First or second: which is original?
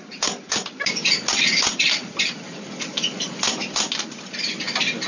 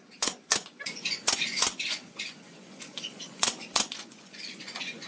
first